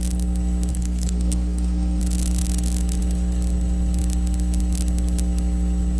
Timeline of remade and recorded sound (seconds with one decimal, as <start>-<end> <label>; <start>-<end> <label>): 0.0-0.7 recorded; 0.7-2.0 remade; 2.0-6.0 recorded